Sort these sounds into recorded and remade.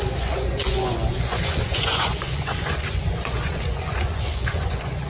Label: remade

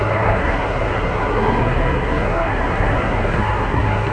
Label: remade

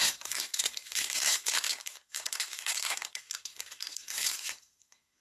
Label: remade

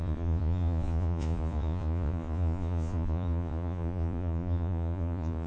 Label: remade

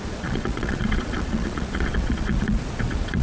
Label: remade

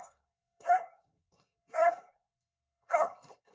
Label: remade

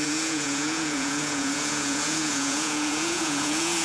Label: remade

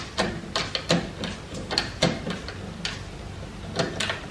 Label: recorded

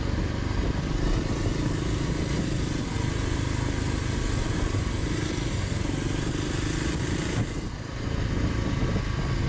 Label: recorded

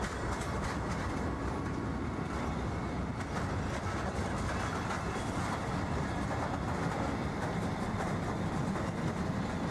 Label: recorded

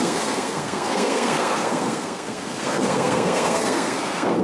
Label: remade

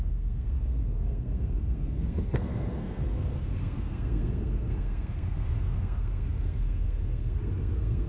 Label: remade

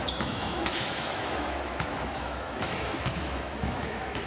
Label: remade